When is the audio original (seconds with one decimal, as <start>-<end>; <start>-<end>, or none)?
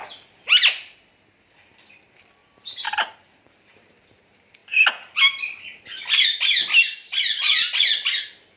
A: 0.0-1.9; 2.4-3.1; 4.6-8.6